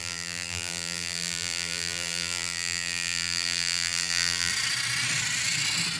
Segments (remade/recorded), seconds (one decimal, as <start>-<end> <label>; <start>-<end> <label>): 0.0-4.5 remade; 4.5-6.0 recorded